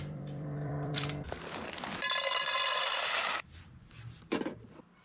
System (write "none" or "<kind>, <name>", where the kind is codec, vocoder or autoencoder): vocoder, BigVGAN v2